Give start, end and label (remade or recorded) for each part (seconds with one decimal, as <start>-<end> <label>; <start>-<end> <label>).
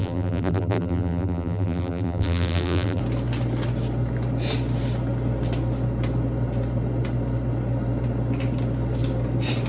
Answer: 0.0-3.0 remade; 3.0-9.7 recorded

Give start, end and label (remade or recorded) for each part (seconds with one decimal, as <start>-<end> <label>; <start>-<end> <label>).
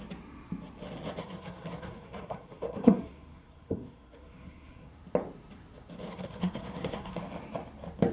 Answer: 0.0-1.2 recorded; 1.2-4.9 remade; 4.9-6.1 recorded; 6.1-7.2 remade; 7.2-8.1 recorded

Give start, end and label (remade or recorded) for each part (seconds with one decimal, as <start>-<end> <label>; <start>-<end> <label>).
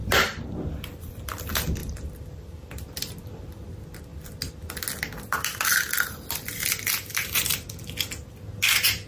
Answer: 0.0-1.3 remade; 1.3-1.8 recorded; 1.8-3.6 remade; 3.6-9.1 recorded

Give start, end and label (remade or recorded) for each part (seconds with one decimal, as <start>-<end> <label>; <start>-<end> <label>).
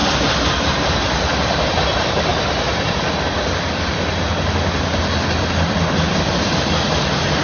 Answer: 0.0-7.4 recorded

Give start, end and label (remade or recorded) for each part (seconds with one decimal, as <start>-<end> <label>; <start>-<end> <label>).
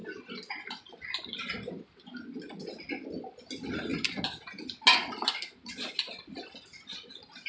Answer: 0.0-7.5 recorded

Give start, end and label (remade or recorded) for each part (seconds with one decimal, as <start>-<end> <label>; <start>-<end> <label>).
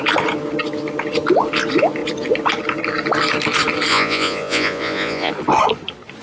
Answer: 0.0-3.9 recorded; 3.9-5.3 remade; 5.3-6.2 recorded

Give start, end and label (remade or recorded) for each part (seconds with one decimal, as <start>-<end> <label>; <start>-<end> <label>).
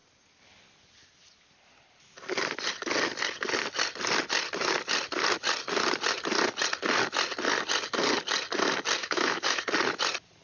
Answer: 0.0-9.0 recorded; 9.0-9.6 remade; 9.6-10.4 recorded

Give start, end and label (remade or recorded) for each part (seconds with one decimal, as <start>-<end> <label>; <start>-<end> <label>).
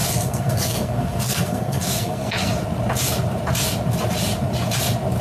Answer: 0.0-2.5 remade; 2.5-5.2 recorded